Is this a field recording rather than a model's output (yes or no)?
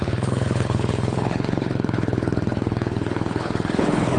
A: no